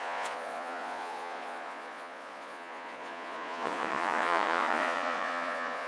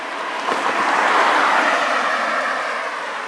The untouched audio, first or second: second